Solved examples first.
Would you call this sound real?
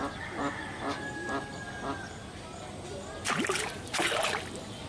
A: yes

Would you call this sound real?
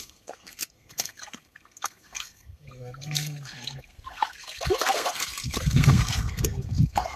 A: no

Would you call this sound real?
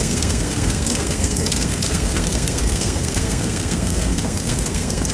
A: no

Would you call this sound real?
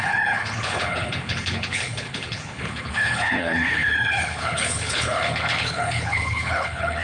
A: no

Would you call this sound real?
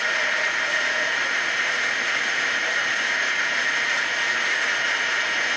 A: no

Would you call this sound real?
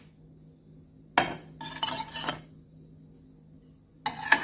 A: yes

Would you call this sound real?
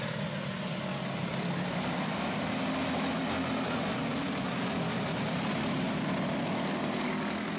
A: yes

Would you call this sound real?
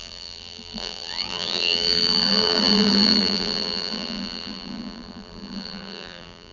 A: no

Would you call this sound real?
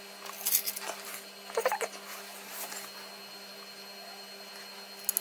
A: yes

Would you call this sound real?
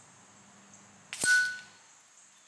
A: yes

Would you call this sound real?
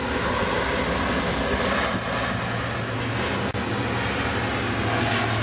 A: yes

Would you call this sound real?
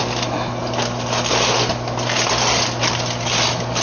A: yes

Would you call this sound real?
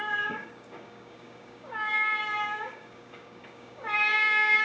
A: no